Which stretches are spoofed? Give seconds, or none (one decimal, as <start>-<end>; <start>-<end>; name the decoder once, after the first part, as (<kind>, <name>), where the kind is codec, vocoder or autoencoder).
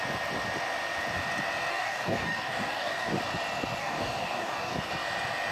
1.7-3.2 (codec, DAC); 3.8-4.9